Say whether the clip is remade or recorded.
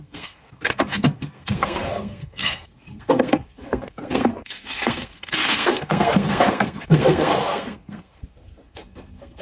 remade